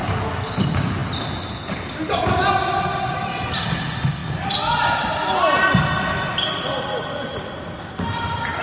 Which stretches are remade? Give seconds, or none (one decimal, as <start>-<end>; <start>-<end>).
none